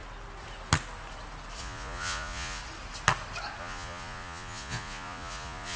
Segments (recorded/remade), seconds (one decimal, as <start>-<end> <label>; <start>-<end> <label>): 0.0-1.6 recorded; 1.6-2.6 remade; 2.6-3.6 recorded; 3.6-5.8 remade